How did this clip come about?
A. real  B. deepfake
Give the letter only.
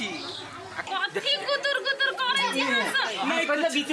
A